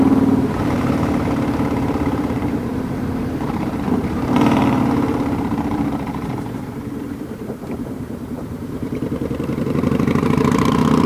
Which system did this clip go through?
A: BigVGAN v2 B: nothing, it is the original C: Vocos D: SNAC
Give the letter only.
A